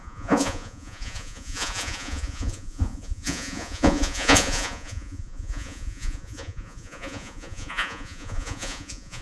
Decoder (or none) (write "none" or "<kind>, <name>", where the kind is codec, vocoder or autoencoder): vocoder, Vocos